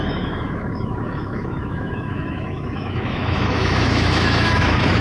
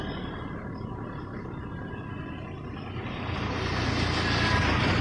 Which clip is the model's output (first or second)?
first